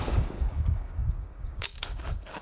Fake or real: fake